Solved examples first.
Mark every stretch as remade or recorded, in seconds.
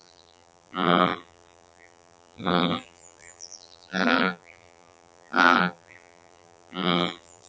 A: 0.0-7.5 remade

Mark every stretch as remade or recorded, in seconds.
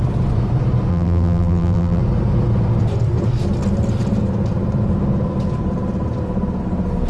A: 0.0-0.9 recorded; 0.9-2.0 remade; 2.0-7.1 recorded